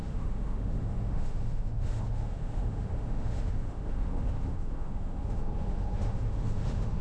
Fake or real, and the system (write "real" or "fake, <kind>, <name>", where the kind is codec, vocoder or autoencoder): fake, autoencoder, DAC-VAE